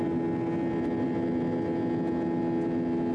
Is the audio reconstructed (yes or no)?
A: no